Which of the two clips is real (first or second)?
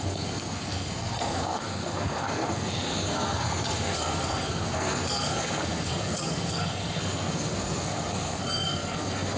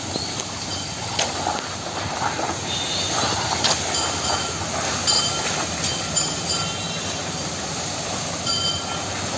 second